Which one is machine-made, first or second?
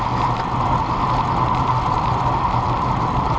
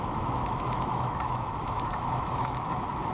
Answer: second